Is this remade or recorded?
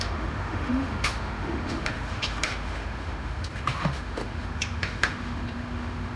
remade